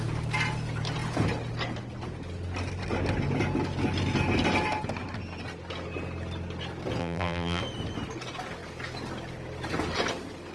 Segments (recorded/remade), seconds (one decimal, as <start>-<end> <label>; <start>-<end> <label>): 0.0-7.0 recorded; 7.0-7.6 remade; 7.6-10.5 recorded

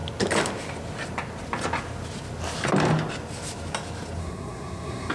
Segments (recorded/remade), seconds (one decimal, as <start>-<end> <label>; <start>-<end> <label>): 0.0-4.2 recorded; 4.2-5.1 remade

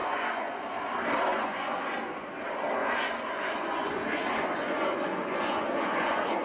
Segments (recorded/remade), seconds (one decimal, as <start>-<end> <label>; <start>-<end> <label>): 0.0-0.6 remade; 0.6-1.3 recorded; 1.3-2.3 remade; 2.3-2.8 recorded; 2.8-6.4 remade

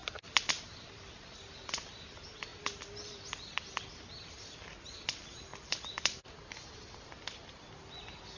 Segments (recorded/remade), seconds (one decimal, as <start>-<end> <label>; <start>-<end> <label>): 0.0-0.5 remade; 0.5-2.5 recorded; 2.5-3.1 remade; 3.1-5.5 recorded; 5.5-6.3 remade; 6.3-8.4 recorded

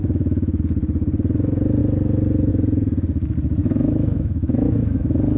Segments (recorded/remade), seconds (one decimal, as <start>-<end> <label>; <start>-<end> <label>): 0.0-0.6 remade; 0.6-3.6 recorded; 3.6-5.4 remade

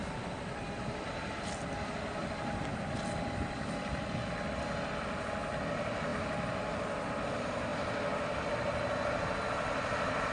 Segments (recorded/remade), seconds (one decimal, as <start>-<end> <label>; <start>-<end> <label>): 0.0-10.3 recorded

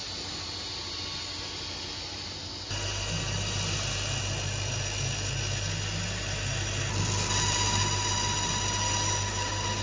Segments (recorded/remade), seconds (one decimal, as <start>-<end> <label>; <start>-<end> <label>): 0.0-9.8 recorded